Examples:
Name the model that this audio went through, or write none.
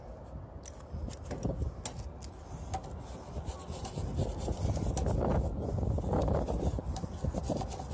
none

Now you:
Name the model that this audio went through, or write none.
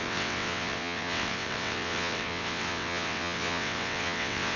vocoder, WaveNeXt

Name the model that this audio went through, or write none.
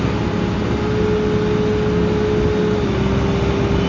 none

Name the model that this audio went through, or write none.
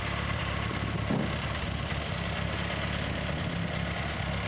none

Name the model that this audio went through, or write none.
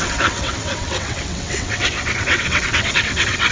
vocoder, WaveNeXt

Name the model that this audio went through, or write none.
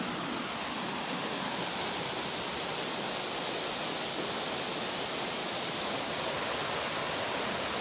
none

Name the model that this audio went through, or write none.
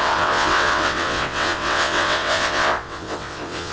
vocoder, WaveNeXt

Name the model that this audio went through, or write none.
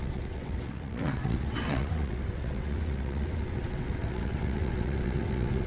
vocoder, WaveNeXt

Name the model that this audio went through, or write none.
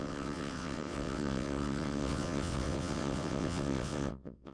vocoder, WaveNeXt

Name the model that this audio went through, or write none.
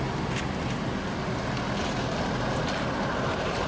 none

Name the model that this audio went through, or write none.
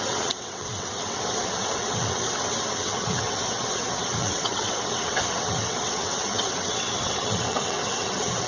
vocoder, WaveNeXt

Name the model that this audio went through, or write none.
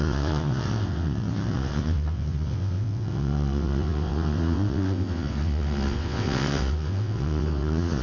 vocoder, WaveNeXt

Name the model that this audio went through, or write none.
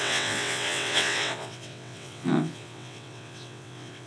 vocoder, WaveNeXt